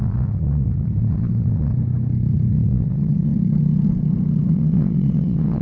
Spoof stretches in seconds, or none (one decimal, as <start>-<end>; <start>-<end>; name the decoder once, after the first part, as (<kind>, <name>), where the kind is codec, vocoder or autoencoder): 0.0-1.7 (vocoder, Vocos); 2.5-3.3; 4.5-5.6